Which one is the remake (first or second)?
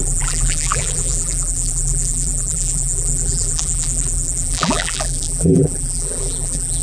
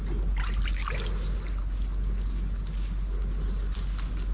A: first